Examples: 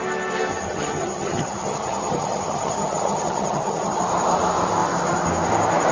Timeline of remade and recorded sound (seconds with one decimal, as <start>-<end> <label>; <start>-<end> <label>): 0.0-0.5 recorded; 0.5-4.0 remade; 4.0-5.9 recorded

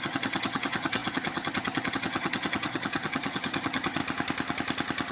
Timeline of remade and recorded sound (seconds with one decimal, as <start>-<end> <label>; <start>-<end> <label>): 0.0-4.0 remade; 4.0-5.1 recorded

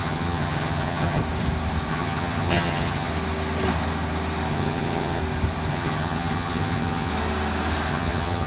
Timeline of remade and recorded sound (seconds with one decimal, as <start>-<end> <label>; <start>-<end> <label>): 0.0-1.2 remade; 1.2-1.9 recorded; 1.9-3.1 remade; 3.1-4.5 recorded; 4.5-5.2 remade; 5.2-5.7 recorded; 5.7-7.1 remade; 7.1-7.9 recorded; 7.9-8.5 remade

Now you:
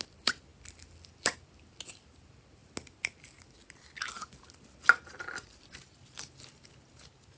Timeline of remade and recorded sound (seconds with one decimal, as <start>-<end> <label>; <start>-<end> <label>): 0.0-7.4 recorded